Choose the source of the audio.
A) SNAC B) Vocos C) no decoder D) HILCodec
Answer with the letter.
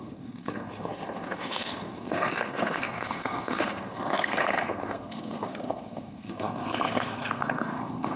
A